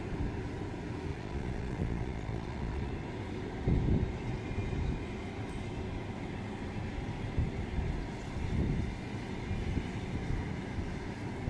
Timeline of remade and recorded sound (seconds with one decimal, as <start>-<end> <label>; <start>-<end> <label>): 0.0-1.1 recorded; 1.1-2.9 remade; 2.9-11.5 recorded